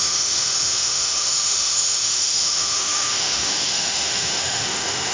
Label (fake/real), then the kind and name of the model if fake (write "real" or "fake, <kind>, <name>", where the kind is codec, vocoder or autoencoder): fake, autoencoder, DAC-VAE